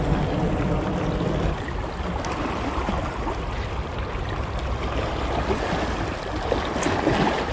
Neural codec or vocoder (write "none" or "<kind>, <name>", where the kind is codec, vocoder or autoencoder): none